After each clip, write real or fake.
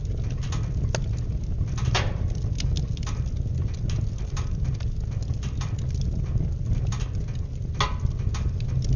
real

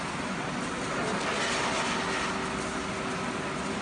real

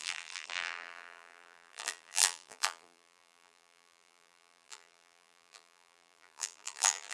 fake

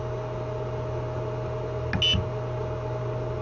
real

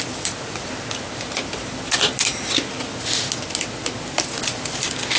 real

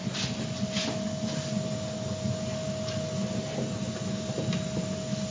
real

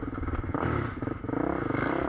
real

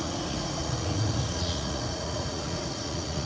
fake